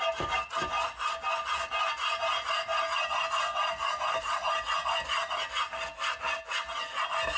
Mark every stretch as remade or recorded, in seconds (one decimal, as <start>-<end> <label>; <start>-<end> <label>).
0.0-7.4 recorded